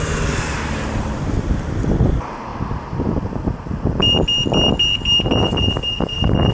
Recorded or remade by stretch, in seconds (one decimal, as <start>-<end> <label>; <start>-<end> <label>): 0.0-6.5 recorded